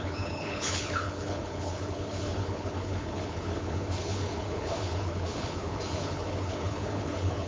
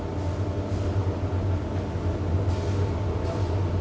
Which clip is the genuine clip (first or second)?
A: second